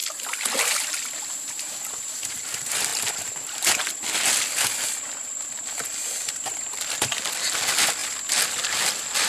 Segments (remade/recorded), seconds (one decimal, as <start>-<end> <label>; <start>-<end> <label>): 0.0-2.1 recorded; 2.1-2.9 remade; 2.9-6.3 recorded; 6.3-8.0 remade; 8.0-8.5 recorded; 8.5-9.3 remade